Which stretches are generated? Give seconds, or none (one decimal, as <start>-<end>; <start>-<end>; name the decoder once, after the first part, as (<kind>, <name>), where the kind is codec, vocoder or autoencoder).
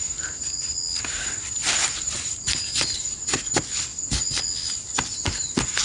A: 1.8-3.2 (vocoder, BigVGAN v2)